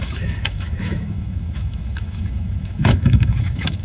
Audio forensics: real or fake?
fake